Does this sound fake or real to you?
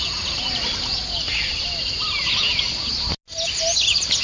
real